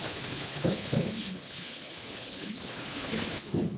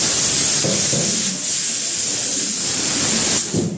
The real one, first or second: second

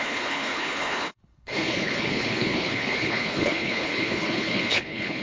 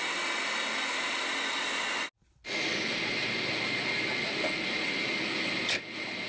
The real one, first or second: second